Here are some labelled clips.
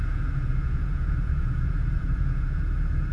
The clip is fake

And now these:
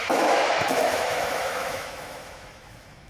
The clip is fake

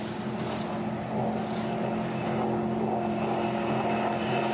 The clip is real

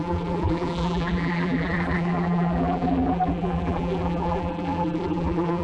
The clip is fake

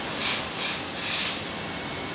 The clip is fake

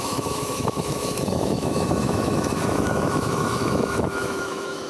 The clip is fake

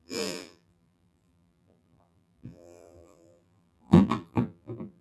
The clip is fake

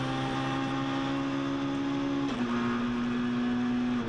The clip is real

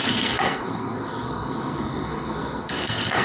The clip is fake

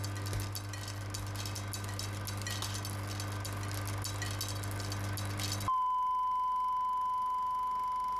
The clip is real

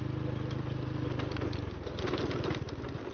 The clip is real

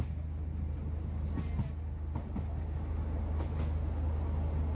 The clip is real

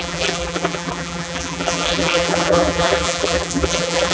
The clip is fake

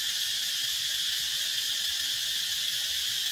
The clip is real